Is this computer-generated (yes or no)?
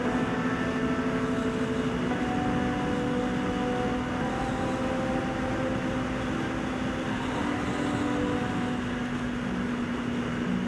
no